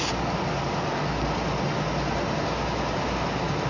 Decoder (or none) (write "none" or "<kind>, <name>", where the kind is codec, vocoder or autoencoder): none